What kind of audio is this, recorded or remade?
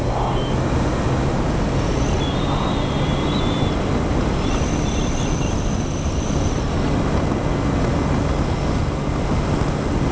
recorded